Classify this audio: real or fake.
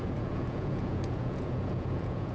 fake